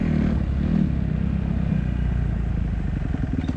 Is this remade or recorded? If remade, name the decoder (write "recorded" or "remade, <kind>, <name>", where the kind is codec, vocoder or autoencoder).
recorded